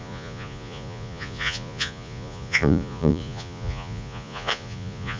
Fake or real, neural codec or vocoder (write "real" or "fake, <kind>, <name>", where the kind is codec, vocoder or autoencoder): fake, vocoder, Vocos